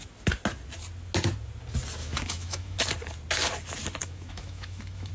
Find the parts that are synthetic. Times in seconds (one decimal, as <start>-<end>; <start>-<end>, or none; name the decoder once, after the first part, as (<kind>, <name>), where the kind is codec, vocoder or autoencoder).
2.0-2.8 (autoencoder, DAC-VAE); 4.0-5.1